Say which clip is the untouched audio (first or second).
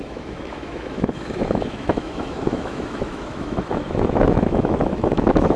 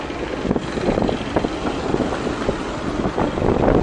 second